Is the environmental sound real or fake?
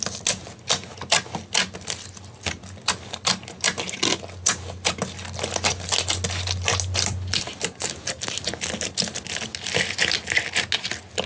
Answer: real